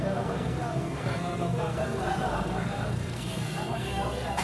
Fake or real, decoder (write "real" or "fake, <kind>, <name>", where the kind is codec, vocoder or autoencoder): fake, codec, SNAC